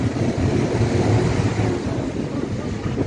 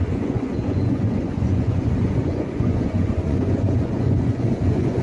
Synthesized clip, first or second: second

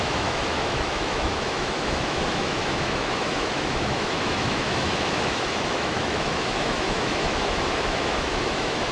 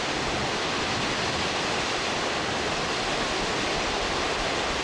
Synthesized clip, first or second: first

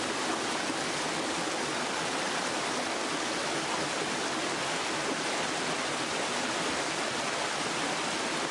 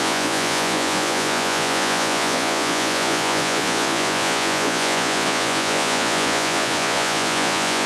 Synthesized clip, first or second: second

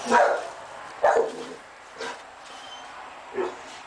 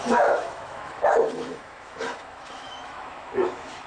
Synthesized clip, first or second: second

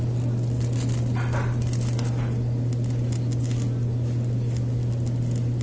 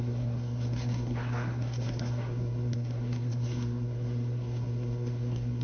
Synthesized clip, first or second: second